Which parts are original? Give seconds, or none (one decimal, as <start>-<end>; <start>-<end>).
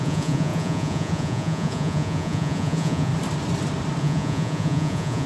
3.1-4.0